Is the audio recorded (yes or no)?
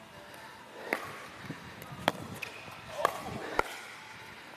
yes